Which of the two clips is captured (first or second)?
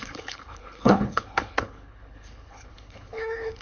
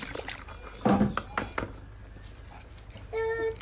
second